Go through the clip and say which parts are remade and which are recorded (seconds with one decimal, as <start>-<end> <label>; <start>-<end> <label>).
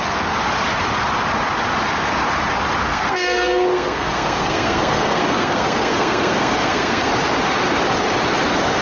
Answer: 0.0-2.9 recorded; 2.9-7.1 remade; 7.1-8.8 recorded